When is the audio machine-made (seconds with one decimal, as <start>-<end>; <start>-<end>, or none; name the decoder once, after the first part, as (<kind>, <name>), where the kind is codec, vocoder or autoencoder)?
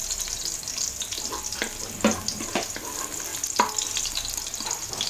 none